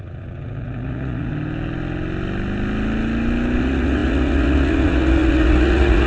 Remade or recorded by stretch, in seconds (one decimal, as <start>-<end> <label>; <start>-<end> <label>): 0.0-1.3 remade; 1.3-3.6 recorded; 3.6-6.1 remade